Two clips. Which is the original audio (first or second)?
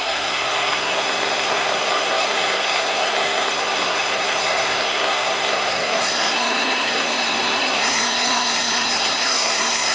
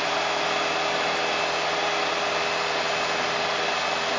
second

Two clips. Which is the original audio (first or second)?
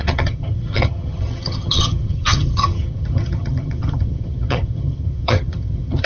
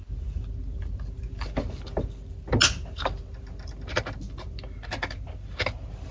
second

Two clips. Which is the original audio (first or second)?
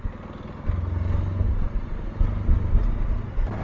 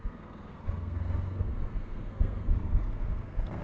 first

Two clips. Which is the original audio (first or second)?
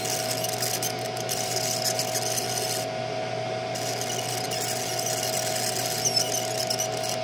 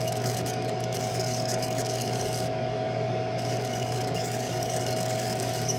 first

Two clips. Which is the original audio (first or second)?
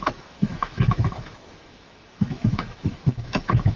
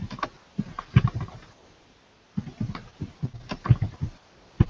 second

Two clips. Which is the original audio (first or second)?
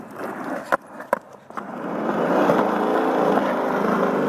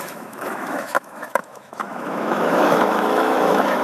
first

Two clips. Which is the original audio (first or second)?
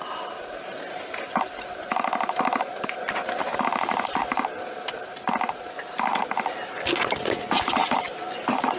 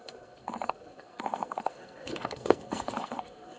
first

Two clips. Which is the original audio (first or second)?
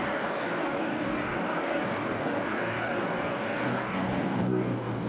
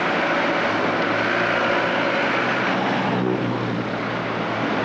second